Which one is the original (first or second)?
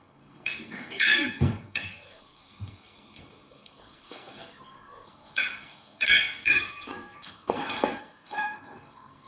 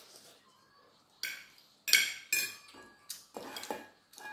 second